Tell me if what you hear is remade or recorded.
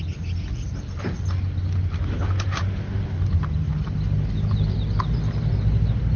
recorded